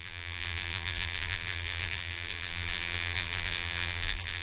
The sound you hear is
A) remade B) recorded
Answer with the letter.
A